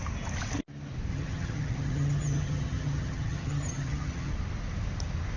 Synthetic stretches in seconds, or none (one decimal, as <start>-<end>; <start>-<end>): 1.1-4.3